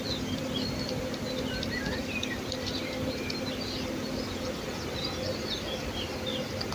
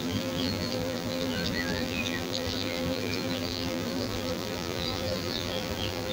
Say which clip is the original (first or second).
first